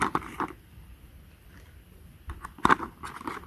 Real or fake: real